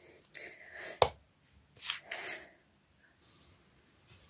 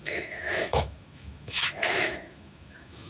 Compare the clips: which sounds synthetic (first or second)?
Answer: second